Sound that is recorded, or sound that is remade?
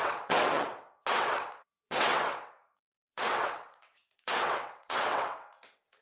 remade